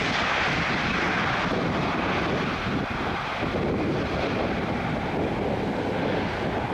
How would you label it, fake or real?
real